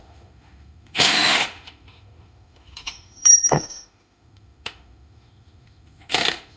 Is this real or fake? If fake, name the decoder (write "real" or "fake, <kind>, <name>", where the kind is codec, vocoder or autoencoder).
fake, autoencoder, DAC-VAE